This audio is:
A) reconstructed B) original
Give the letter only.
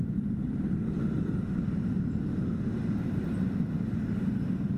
B